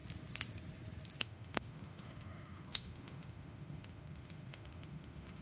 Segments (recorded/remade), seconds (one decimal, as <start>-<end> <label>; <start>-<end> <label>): 0.0-1.2 recorded; 1.2-5.4 remade